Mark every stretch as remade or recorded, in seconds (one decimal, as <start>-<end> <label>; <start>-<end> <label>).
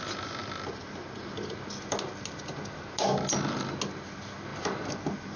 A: 0.0-4.5 recorded; 4.5-5.4 remade